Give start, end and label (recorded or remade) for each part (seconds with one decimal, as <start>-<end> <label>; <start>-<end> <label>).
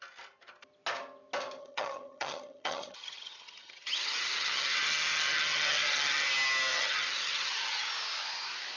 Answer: 0.0-1.6 recorded; 1.6-6.3 remade; 6.3-6.7 recorded; 6.7-7.9 remade; 7.9-8.8 recorded